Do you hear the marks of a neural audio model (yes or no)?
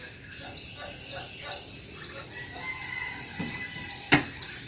no